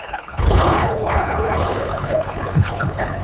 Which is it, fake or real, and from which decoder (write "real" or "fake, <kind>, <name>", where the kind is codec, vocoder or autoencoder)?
fake, codec, HILCodec